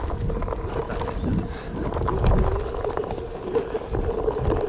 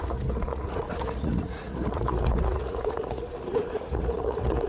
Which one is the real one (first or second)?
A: first